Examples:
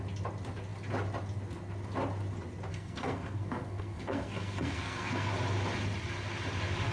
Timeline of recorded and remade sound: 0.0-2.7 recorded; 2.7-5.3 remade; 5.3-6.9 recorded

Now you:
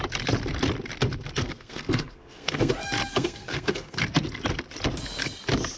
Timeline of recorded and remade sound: 0.0-1.4 recorded; 1.4-2.7 remade; 2.7-3.1 recorded; 3.1-4.0 remade; 4.0-5.8 recorded

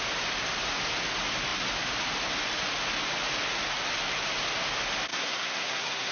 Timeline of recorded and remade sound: 0.0-5.1 recorded; 5.1-6.1 remade

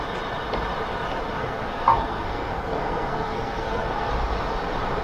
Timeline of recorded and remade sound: 0.0-1.4 recorded; 1.4-4.1 remade; 4.1-5.0 recorded